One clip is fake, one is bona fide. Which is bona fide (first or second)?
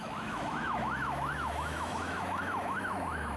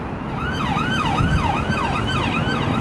second